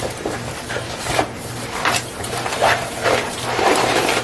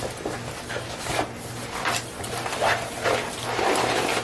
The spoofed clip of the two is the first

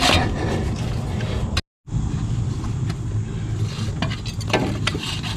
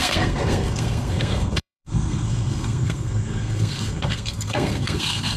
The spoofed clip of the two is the second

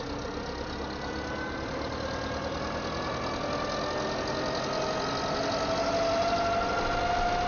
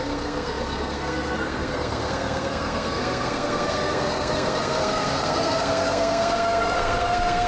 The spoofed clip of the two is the second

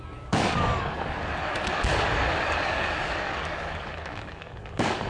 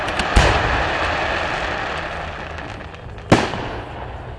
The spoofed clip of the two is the first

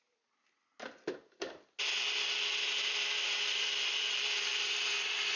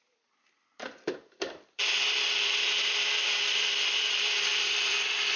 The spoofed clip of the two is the second